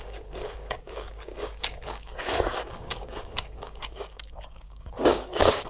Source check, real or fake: fake